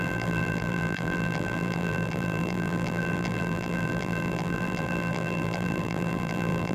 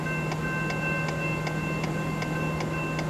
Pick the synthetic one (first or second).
first